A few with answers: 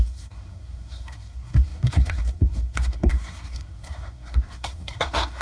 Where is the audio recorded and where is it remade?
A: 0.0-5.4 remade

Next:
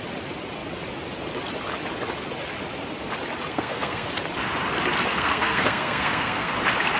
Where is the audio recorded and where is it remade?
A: 0.0-3.5 recorded; 3.5-4.1 remade; 4.1-5.1 recorded; 5.1-6.5 remade; 6.5-7.0 recorded